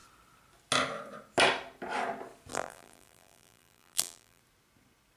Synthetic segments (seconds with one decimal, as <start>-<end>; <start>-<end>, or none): 2.5-4.4